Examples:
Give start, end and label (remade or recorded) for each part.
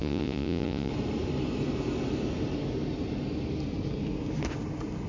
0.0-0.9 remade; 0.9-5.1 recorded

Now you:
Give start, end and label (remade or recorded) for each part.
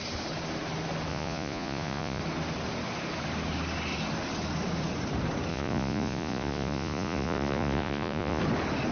0.0-1.1 recorded; 1.1-2.2 remade; 2.2-5.5 recorded; 5.5-8.4 remade; 8.4-8.9 recorded